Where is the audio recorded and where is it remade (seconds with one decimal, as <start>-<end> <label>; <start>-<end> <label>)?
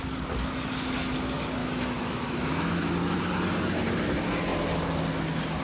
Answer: 0.0-1.6 recorded; 1.6-3.2 remade; 3.2-5.6 recorded